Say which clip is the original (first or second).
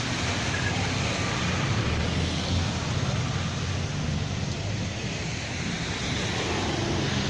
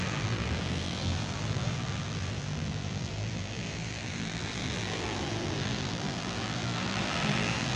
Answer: first